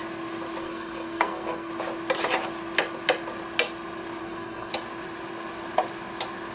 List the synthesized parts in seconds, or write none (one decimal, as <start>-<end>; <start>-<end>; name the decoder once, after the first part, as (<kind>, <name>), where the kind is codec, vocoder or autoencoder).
0.6-1.7 (codec, SNAC); 4.2-4.7